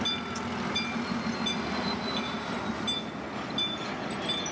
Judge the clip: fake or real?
real